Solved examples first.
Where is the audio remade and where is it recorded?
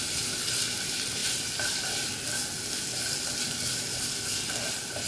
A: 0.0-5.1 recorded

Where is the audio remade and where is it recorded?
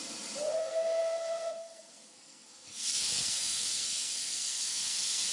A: 0.0-0.6 recorded; 0.6-5.3 remade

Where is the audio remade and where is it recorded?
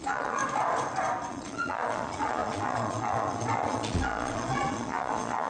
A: 0.0-0.4 remade; 0.4-1.3 recorded; 1.3-5.5 remade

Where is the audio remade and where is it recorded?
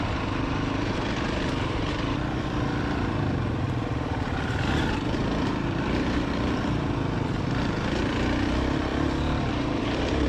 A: 0.0-8.9 remade; 8.9-9.4 recorded; 9.4-10.3 remade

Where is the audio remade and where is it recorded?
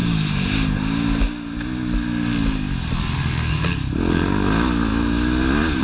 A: 0.0-5.8 recorded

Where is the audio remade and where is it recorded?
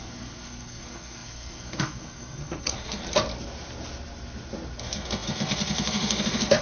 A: 0.0-3.0 remade; 3.0-4.8 recorded; 4.8-6.6 remade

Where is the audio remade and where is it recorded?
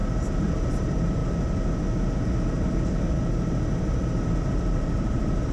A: 0.0-1.2 remade; 1.2-4.3 recorded; 4.3-5.5 remade